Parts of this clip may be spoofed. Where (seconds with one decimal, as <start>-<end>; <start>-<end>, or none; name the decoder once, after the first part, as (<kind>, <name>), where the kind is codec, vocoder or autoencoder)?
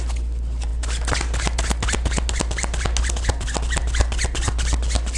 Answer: none